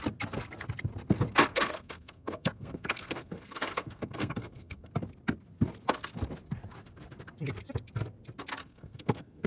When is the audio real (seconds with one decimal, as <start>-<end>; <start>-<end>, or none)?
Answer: 0.0-1.5; 4.9-8.6